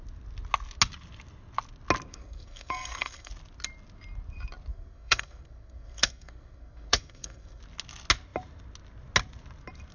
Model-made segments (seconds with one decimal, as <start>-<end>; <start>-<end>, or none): 2.1-3.3; 4.7-7.6